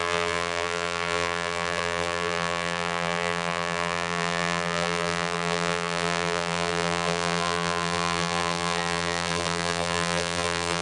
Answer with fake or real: fake